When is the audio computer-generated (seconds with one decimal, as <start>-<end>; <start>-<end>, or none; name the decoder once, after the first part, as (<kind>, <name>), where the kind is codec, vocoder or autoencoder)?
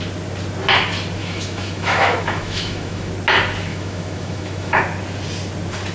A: 1.2-3.1 (autoencoder, DAC-VAE); 3.7-4.8